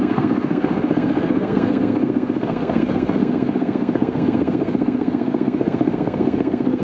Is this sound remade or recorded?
remade